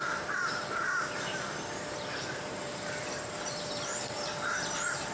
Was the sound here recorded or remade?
remade